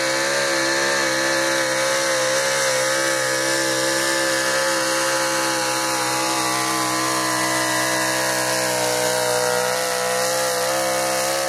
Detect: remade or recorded recorded